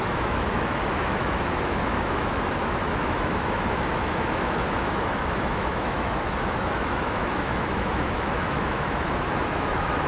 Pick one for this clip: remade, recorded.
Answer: remade